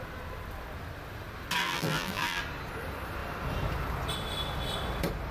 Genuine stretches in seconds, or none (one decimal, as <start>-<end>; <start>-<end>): 0.0-1.6; 2.4-5.3